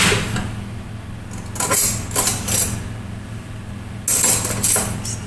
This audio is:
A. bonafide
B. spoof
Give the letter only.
A